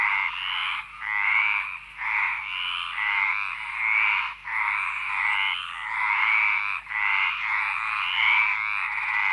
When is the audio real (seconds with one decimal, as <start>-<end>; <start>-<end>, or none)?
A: 0.0-9.3